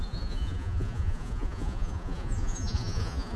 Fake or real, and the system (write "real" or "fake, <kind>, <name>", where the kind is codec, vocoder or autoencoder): fake, vocoder, Vocos